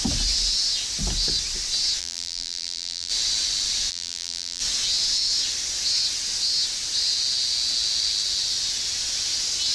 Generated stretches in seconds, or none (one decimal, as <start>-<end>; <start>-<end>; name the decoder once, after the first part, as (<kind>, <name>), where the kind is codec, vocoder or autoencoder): 2.0-3.1 (vocoder, BigVGAN v2); 3.9-4.6